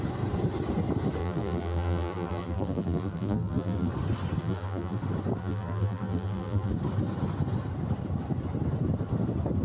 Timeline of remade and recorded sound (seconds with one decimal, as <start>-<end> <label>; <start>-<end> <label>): 0.0-1.2 recorded; 1.2-3.9 remade; 3.9-4.4 recorded; 4.4-5.0 remade; 5.0-5.4 recorded; 5.4-6.7 remade; 6.7-9.6 recorded